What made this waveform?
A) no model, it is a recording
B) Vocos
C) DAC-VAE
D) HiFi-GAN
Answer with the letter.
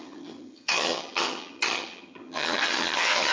D